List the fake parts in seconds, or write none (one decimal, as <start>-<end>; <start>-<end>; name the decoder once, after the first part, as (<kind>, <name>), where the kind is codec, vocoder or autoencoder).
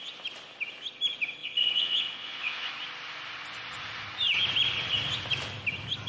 1.4-2.7 (vocoder, Vocos)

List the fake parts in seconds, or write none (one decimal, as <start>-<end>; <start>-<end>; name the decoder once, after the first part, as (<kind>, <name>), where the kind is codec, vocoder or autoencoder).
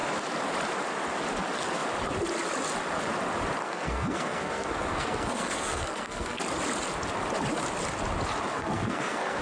3.6-6.4 (codec, SNAC); 8.5-9.4